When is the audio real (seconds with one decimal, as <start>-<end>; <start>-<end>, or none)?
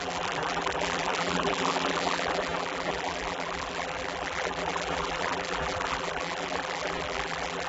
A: none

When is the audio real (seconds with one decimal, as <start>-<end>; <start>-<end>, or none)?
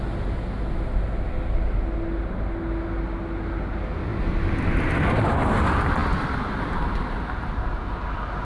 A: 0.0-8.4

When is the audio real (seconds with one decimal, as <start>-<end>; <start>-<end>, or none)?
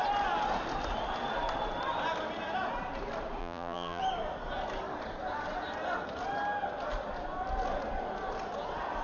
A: 0.0-3.4; 4.0-9.0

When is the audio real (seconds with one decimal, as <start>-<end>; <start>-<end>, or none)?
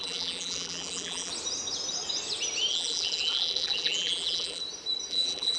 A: 1.3-2.7; 4.6-5.1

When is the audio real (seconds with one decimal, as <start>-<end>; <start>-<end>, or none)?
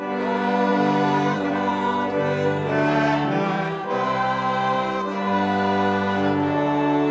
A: 0.0-0.7; 1.7-2.6; 3.9-7.1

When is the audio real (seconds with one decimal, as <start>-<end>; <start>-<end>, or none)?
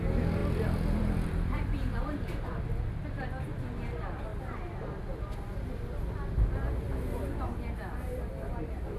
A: 0.0-0.4; 2.6-9.0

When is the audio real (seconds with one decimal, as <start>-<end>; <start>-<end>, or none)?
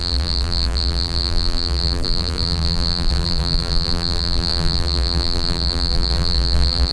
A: none